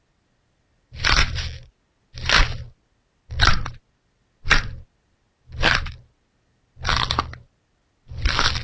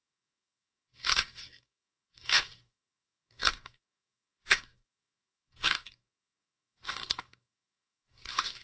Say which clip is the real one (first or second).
first